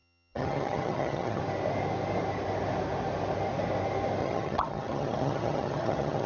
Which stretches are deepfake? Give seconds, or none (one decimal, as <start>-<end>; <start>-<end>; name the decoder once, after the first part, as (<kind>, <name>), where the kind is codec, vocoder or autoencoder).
0.0-1.4 (vocoder, HiFi-GAN); 4.2-6.3